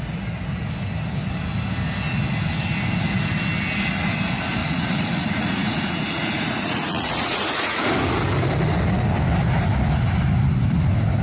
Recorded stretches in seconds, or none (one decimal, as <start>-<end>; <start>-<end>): 0.0-4.6; 7.8-11.2